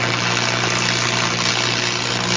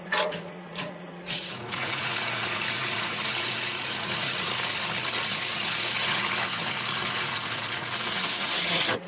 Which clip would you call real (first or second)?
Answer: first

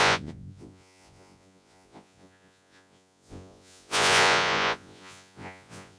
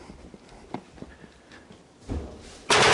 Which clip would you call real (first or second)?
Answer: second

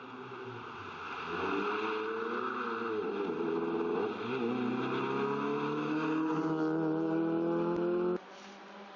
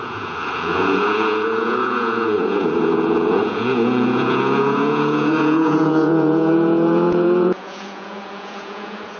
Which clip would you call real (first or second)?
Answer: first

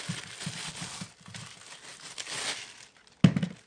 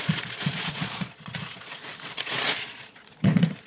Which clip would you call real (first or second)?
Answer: first